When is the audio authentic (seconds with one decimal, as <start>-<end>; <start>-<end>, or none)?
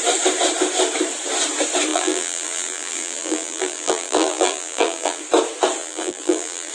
0.0-1.9; 5.2-5.8